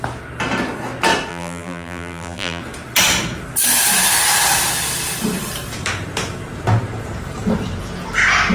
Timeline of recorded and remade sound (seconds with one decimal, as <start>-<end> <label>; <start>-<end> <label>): 0.0-1.3 recorded; 1.3-2.6 remade; 2.6-8.5 recorded